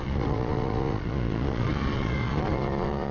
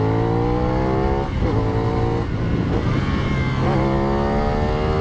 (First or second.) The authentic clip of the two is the second